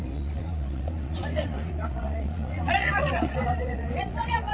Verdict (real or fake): fake